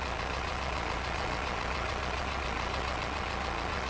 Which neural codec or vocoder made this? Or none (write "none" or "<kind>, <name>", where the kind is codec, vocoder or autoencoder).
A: vocoder, Vocos